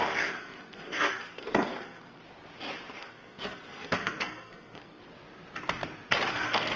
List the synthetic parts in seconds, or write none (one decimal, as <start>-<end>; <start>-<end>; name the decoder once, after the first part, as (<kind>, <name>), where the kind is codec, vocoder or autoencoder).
0.0-2.2 (codec, SNAC); 3.0-5.0; 6.3-6.8